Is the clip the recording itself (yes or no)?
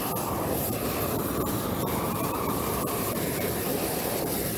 no